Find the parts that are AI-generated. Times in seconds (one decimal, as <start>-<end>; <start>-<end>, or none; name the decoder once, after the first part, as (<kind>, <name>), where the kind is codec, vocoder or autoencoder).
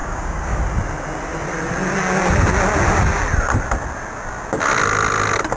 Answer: 0.0-0.6 (codec, DAC)